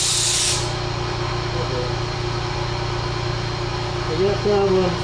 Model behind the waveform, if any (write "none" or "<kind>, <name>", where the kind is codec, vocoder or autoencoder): none